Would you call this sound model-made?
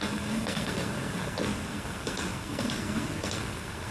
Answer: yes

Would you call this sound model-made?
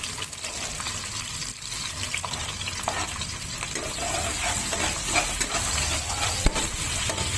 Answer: no